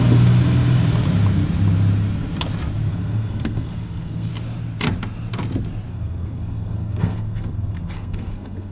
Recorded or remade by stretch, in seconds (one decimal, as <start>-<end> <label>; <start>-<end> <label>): 0.0-2.9 recorded; 2.9-4.3 remade; 4.3-5.9 recorded; 5.9-8.7 remade

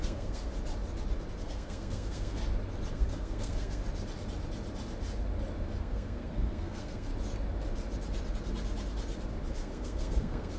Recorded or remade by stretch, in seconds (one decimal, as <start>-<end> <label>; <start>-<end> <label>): 0.0-0.5 remade; 0.5-1.4 recorded; 1.4-2.4 remade; 2.4-2.9 recorded; 2.9-3.8 remade; 3.8-5.8 recorded; 5.8-7.1 remade; 7.1-9.5 recorded; 9.5-10.6 remade

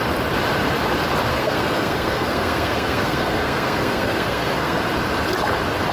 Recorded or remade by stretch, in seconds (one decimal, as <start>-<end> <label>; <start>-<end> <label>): 0.0-1.3 recorded; 1.3-4.8 remade; 4.8-5.9 recorded

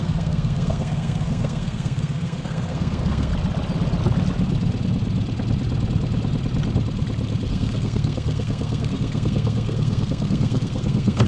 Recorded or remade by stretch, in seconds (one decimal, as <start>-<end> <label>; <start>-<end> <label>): 0.0-3.3 remade; 3.3-7.5 recorded; 7.5-11.3 remade

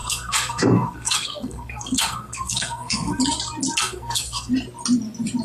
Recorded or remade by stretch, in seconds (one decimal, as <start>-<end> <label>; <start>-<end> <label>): 0.0-3.2 remade; 3.2-3.8 recorded; 3.8-4.5 remade; 4.5-5.4 recorded

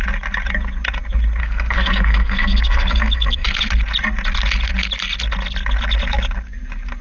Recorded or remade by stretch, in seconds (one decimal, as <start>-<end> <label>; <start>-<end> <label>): 0.0-1.4 recorded; 1.4-3.6 remade; 3.6-7.0 recorded

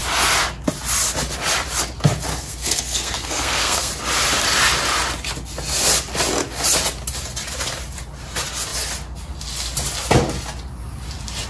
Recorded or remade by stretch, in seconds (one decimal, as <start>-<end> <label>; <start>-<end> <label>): 0.0-2.3 recorded; 2.3-3.9 remade; 3.9-11.5 recorded